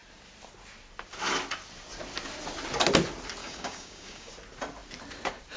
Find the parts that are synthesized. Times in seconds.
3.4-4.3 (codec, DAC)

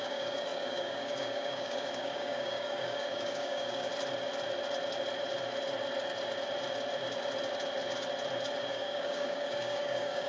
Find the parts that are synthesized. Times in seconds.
0.0-3.9 (codec, DAC); 8.7-10.3

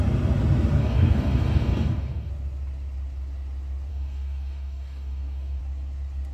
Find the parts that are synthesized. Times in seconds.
0.8-2.3 (codec, DAC); 3.9-5.6

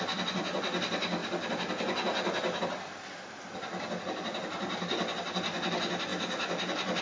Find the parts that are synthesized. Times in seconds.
none

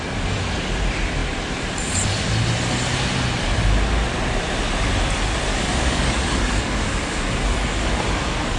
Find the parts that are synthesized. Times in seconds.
5.5-8.6 (codec, DAC)

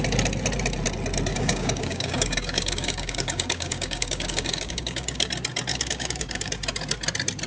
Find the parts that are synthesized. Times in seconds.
1.3-5.3 (codec, DAC); 5.7-6.5

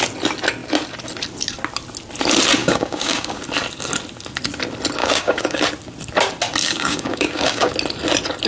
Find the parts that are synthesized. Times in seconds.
2.6-3.4 (codec, DAC); 5.0-5.6; 6.6-7.7